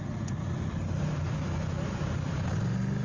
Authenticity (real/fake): real